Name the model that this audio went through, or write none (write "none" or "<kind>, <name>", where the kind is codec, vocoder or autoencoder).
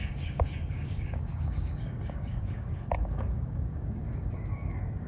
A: codec, DAC